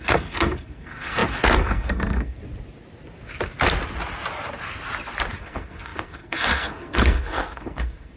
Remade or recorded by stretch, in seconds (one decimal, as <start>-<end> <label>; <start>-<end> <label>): 0.0-2.4 remade; 2.4-5.4 recorded; 5.4-8.2 remade